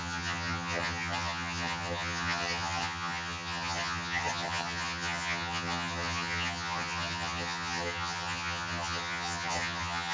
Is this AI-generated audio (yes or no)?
yes